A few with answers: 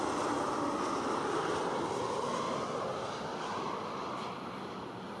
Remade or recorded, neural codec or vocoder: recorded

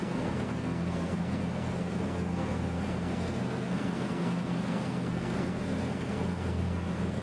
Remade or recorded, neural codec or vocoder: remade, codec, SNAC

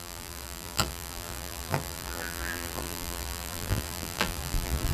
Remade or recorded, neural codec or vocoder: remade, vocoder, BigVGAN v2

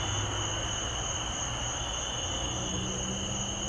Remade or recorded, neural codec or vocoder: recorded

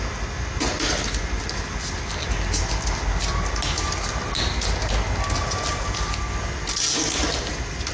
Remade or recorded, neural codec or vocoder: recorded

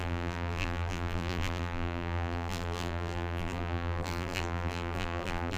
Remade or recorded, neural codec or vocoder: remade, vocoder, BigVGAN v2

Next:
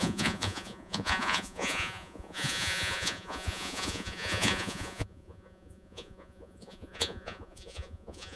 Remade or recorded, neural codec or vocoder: remade, vocoder, Vocos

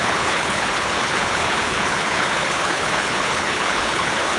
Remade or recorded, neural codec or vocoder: remade, codec, HILCodec